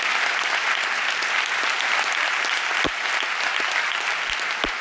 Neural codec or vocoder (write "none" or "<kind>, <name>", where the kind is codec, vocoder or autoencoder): none